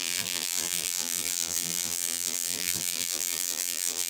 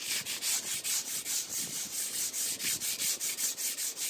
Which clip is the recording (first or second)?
second